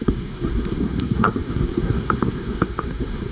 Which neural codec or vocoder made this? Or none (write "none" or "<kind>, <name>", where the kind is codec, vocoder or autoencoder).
codec, SNAC